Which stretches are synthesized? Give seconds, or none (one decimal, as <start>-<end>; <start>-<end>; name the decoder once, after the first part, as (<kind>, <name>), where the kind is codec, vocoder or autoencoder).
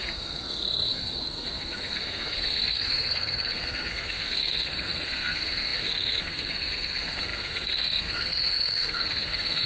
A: 0.0-9.7 (codec, SNAC)